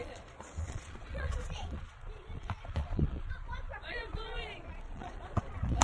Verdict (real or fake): fake